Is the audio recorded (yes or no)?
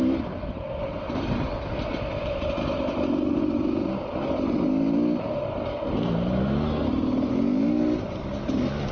yes